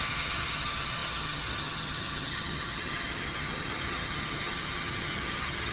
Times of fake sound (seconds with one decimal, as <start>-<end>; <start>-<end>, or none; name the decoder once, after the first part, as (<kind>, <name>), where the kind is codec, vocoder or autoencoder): 0.0-5.7 (vocoder, HiFi-GAN)